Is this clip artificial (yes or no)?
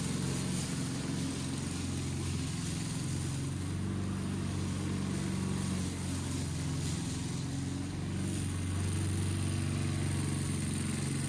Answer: no